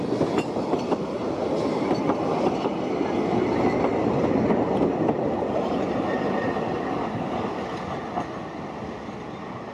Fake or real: real